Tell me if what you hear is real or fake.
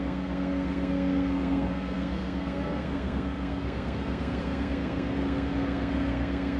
fake